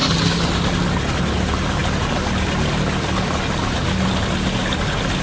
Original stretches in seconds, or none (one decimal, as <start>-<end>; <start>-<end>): 0.0-5.2